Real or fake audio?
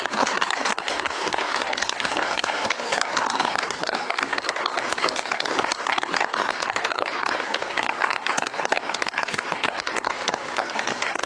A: fake